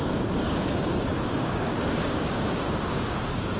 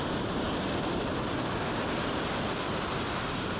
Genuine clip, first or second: second